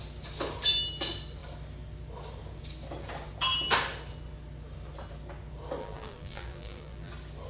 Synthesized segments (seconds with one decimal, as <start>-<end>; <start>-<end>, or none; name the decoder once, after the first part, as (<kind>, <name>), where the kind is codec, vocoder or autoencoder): 5.8-7.1 (vocoder, BigVGAN v2)